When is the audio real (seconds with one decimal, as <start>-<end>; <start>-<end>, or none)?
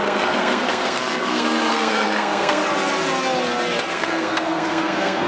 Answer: 2.6-3.9